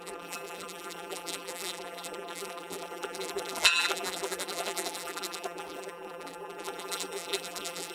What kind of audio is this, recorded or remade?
remade